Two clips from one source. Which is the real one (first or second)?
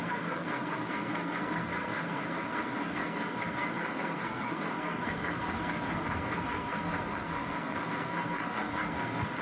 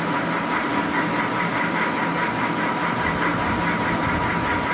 second